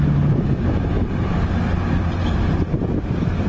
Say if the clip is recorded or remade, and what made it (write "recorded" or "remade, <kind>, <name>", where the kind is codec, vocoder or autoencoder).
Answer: recorded